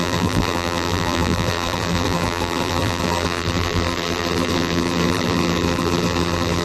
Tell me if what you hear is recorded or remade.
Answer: remade